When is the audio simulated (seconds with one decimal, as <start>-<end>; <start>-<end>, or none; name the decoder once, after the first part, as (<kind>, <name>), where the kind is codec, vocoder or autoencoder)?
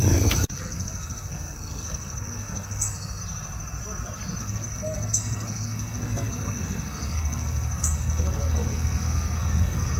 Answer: 0.0-3.2 (codec, SNAC); 4.4-10.0